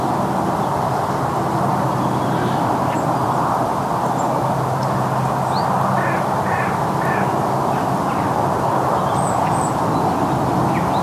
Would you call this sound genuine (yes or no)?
yes